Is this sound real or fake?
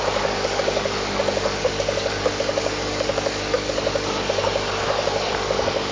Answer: fake